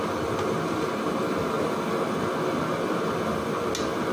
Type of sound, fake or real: real